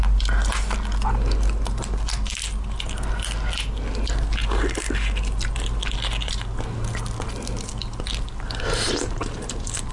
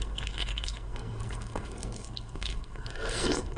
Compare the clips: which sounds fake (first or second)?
second